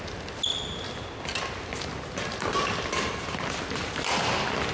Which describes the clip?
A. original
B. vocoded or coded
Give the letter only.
A